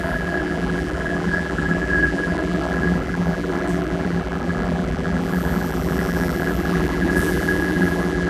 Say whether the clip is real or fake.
fake